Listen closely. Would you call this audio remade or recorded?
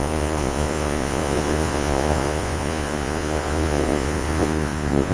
remade